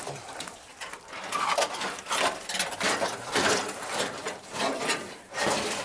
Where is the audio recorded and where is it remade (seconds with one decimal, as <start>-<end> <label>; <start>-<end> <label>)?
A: 0.0-5.8 remade